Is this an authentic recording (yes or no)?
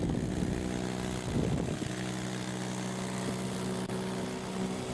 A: yes